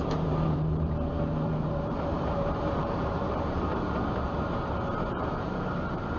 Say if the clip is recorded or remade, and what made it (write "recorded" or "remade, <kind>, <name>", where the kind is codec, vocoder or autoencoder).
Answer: remade, vocoder, BigVGAN v2